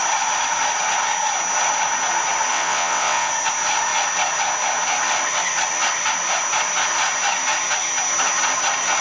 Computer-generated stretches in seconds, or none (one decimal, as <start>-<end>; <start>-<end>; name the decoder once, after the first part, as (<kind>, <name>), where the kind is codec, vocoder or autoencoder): 2.5-3.3 (vocoder, WaveNeXt)